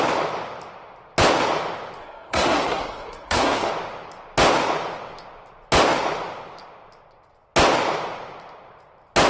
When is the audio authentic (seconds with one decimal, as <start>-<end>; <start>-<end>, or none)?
0.0-2.0; 3.7-9.3